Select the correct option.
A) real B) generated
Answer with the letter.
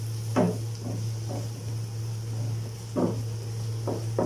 A